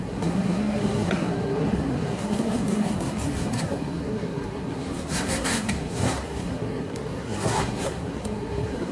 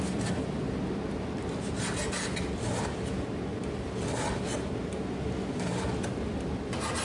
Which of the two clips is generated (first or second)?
first